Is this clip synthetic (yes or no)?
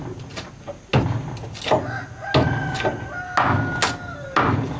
no